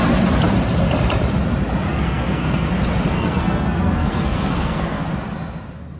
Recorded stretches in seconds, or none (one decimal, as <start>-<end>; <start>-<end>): 0.0-1.9; 2.7-3.1; 5.0-6.0